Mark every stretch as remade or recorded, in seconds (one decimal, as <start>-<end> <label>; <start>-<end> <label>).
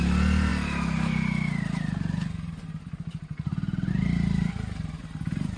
0.0-5.6 recorded